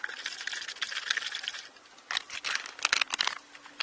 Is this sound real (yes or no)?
yes